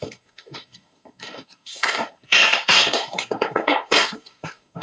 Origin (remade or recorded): remade